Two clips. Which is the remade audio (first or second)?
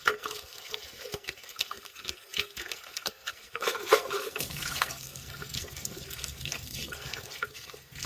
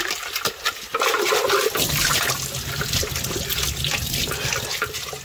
first